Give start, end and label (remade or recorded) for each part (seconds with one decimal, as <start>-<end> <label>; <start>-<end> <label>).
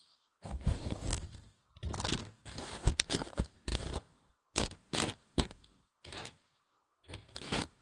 0.0-1.7 remade; 1.7-2.2 recorded; 2.2-7.8 remade